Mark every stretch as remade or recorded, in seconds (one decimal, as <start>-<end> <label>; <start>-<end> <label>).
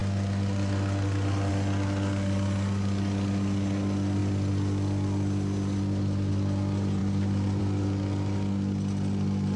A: 0.0-4.2 recorded; 4.2-6.3 remade; 6.3-7.0 recorded; 7.0-7.6 remade; 7.6-9.6 recorded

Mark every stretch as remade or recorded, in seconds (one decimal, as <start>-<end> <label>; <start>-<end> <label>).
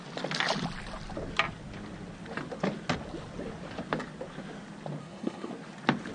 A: 0.0-5.0 recorded; 5.0-5.5 remade; 5.5-6.1 recorded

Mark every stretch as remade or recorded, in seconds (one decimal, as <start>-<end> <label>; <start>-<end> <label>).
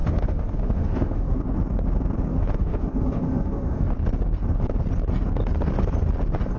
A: 0.0-1.4 remade; 1.4-2.3 recorded; 2.3-3.9 remade; 3.9-6.6 recorded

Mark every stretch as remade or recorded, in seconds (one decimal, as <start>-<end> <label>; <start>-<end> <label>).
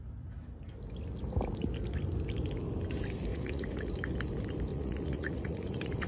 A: 0.0-3.3 recorded; 3.3-3.9 remade; 3.9-4.7 recorded; 4.7-6.1 remade